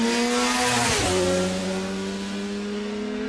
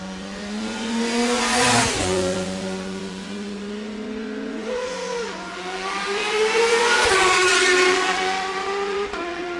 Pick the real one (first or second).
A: first